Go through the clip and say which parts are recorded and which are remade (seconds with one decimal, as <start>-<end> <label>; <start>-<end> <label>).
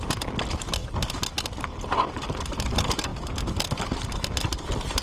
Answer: 0.0-5.0 recorded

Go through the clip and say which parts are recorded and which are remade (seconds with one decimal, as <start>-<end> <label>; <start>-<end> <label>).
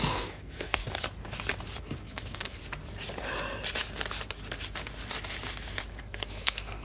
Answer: 0.0-0.8 remade; 0.8-1.8 recorded; 1.8-2.6 remade; 2.6-6.0 recorded; 6.0-6.8 remade